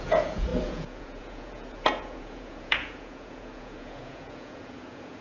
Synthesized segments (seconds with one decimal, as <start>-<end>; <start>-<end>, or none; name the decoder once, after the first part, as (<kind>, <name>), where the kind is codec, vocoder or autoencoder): 0.0-5.2 (vocoder, Vocos)